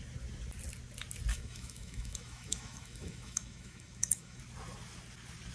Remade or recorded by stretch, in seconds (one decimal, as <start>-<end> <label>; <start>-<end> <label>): 0.0-1.3 recorded; 1.3-4.4 remade; 4.4-5.5 recorded